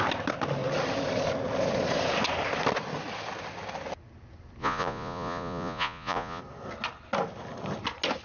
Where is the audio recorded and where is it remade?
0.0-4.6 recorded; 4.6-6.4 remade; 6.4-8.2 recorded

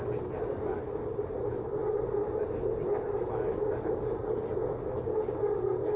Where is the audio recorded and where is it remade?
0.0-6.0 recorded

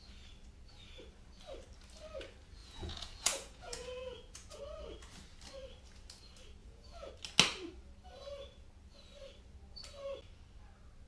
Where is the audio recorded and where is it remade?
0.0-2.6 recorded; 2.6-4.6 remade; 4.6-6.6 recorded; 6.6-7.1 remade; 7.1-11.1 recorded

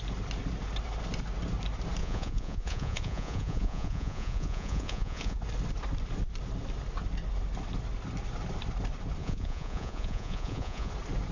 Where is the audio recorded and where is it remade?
0.0-2.0 recorded; 2.0-5.4 remade; 5.4-9.2 recorded; 9.2-10.9 remade; 10.9-11.3 recorded